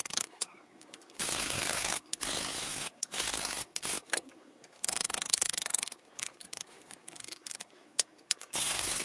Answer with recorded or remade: remade